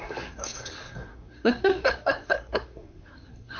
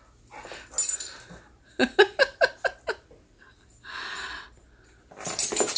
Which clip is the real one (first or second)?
second